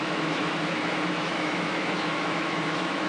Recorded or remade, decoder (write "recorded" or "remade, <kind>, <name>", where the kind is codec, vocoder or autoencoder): remade, autoencoder, DAC-VAE